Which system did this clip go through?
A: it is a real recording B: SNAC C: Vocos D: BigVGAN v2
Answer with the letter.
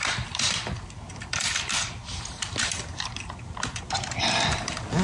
D